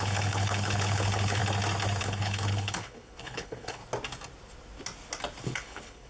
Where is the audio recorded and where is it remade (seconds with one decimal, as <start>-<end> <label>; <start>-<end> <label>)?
0.0-1.4 remade; 1.4-2.0 recorded; 2.0-3.8 remade; 3.8-5.4 recorded; 5.4-6.1 remade